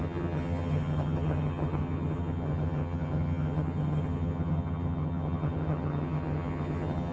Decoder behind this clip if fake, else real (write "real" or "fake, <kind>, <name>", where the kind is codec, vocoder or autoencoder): fake, vocoder, HiFi-GAN